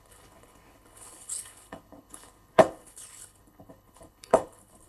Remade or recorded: remade